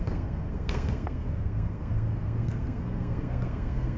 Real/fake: fake